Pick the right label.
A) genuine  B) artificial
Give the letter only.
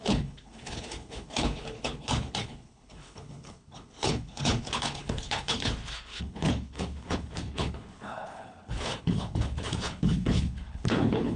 B